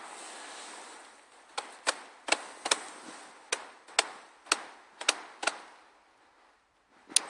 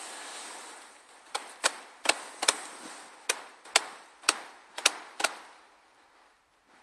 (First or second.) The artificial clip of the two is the second